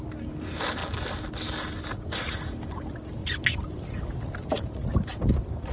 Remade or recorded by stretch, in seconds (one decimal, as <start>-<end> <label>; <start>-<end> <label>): 0.0-3.2 recorded; 3.2-4.9 remade; 4.9-5.7 recorded